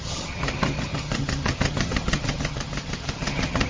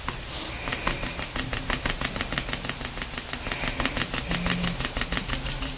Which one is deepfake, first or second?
first